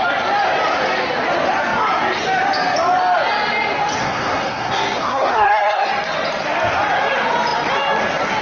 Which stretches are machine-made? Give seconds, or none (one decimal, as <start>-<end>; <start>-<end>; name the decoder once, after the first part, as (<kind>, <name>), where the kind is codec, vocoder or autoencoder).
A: 4.0-5.9 (codec, SNAC)